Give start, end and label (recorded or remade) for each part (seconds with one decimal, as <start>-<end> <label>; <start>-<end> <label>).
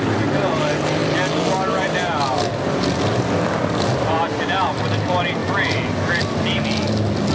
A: 0.0-7.3 recorded